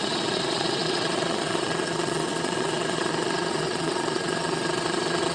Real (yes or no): no